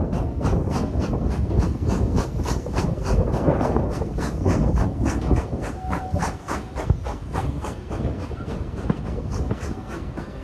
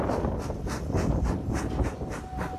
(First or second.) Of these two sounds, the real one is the second